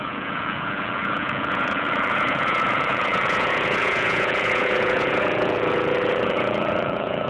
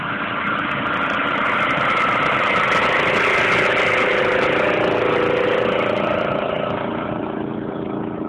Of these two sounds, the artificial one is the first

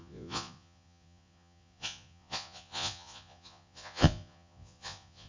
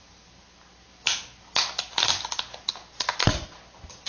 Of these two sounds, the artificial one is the first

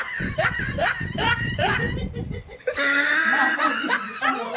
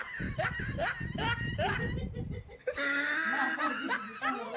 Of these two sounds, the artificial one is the first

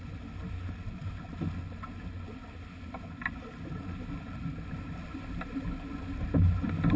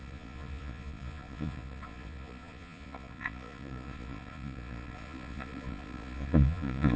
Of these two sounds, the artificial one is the second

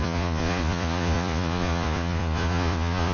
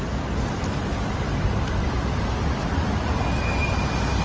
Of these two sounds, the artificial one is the first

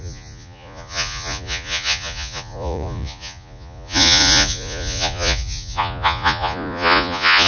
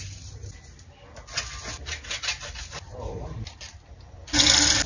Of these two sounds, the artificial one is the first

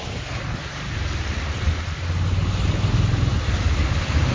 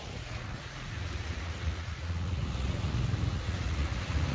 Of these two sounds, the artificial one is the second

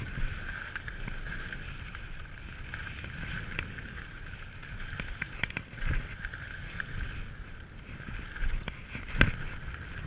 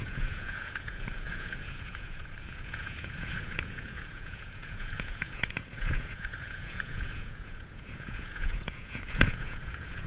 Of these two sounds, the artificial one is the second